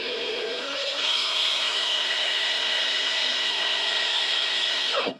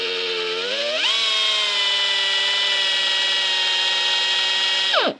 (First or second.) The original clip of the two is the second